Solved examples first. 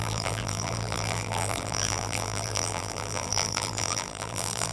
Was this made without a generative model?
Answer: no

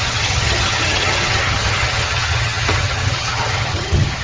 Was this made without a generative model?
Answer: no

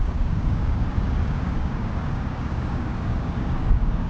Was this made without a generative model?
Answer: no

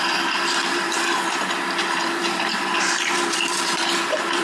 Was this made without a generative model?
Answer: no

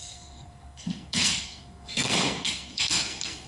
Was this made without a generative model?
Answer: no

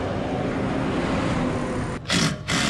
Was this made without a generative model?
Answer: yes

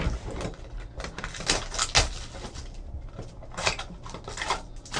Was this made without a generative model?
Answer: yes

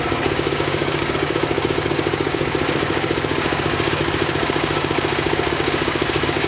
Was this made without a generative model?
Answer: no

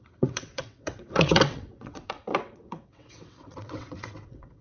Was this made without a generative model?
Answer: no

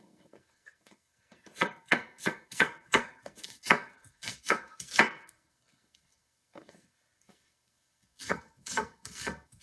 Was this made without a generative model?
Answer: no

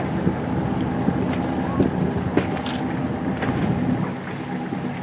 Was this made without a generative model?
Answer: yes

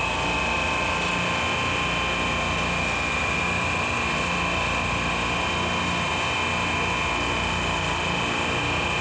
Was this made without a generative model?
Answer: yes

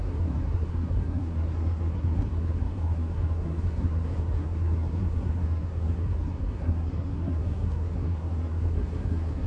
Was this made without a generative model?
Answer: no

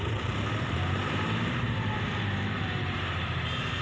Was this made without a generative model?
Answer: no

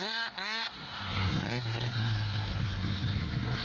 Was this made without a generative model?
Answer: no